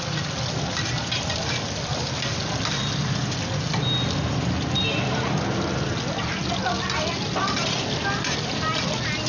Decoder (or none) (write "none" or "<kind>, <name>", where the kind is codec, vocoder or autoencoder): none